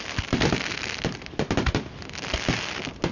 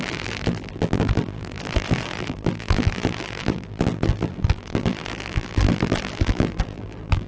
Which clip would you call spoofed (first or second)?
second